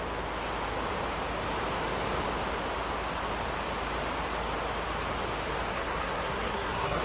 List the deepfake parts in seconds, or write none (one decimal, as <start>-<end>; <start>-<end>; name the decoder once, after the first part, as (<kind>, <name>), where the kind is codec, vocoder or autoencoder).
5.7-7.0 (codec, SNAC)